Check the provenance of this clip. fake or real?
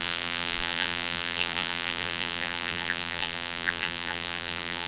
fake